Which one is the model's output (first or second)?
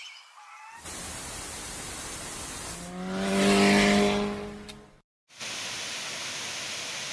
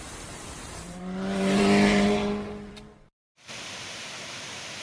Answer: second